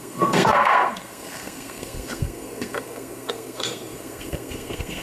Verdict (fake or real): fake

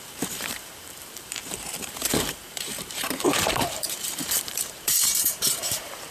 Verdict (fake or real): fake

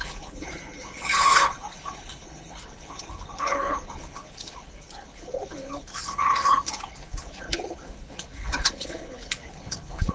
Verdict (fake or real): fake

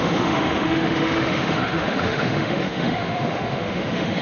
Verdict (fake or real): fake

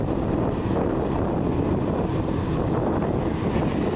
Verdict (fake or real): real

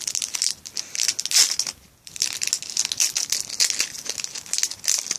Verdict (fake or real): real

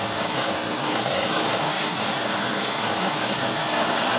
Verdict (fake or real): fake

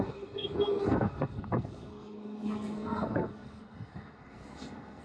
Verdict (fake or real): fake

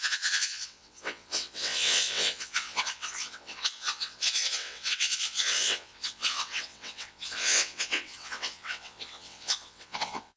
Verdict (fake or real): fake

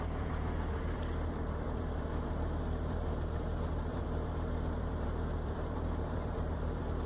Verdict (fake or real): fake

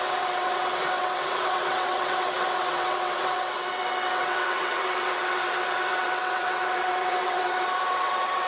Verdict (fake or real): fake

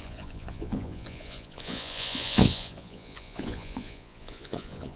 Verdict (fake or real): fake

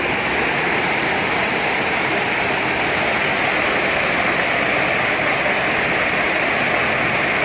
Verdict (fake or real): real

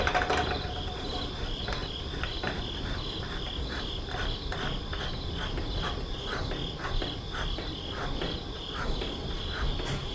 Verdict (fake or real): real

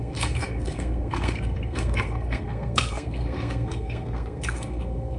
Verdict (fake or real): fake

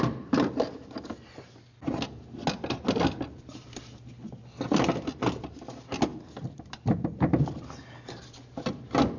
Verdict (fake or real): real